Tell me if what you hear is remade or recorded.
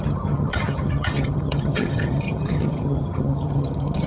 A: remade